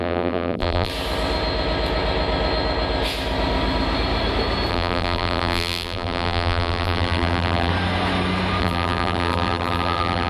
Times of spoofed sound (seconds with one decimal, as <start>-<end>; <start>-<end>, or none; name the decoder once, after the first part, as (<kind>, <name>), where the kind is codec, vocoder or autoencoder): 0.0-0.9 (vocoder, BigVGAN v2); 4.7-7.7; 8.6-10.3